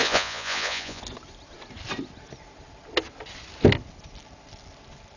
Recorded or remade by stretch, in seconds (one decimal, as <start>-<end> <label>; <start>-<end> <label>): 0.0-1.0 remade; 1.0-5.2 recorded